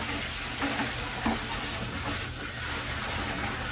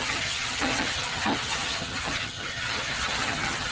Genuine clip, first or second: first